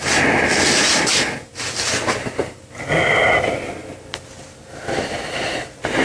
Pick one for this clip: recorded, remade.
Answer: recorded